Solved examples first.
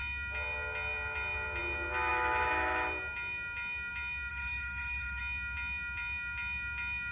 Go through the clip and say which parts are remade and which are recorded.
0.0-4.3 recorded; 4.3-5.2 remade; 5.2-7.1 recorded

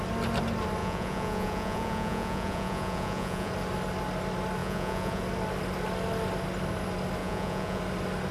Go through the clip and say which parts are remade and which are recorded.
0.0-0.8 recorded; 0.8-3.5 remade; 3.5-4.6 recorded; 4.6-5.2 remade; 5.2-7.2 recorded; 7.2-7.8 remade; 7.8-8.3 recorded

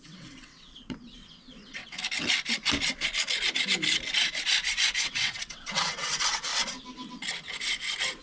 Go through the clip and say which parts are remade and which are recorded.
0.0-2.0 remade; 2.0-4.7 recorded; 4.7-6.5 remade; 6.5-8.2 recorded

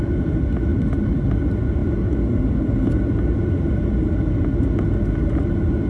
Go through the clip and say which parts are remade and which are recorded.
0.0-5.9 recorded

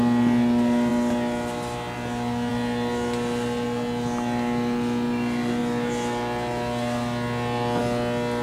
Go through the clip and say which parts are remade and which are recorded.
0.0-8.4 recorded